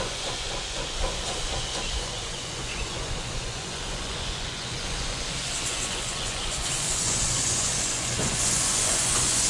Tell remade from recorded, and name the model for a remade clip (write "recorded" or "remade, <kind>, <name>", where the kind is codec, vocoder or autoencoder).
remade, vocoder, Vocos